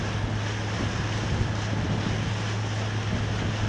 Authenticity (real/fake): real